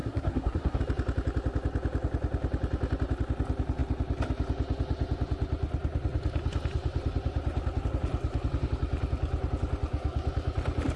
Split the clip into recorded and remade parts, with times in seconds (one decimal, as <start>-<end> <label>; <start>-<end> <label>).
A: 0.0-0.8 remade; 0.8-11.0 recorded